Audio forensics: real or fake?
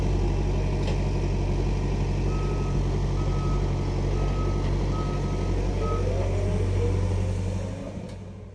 real